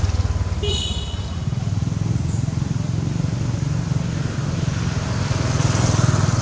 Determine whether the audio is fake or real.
real